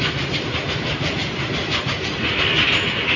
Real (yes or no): yes